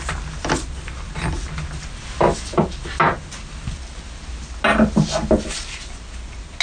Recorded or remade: recorded